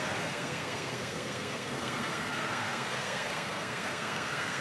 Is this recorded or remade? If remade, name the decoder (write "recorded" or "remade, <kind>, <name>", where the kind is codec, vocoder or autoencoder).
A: remade, codec, SNAC